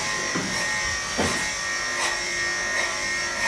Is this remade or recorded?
recorded